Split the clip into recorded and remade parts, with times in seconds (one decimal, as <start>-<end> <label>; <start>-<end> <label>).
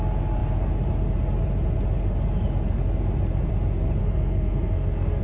0.0-4.0 recorded; 4.0-5.2 remade